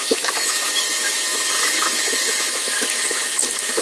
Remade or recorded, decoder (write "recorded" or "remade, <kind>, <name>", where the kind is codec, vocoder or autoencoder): remade, autoencoder, DAC-VAE